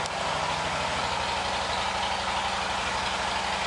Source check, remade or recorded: recorded